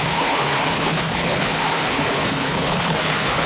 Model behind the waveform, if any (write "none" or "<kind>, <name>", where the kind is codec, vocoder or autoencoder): codec, HILCodec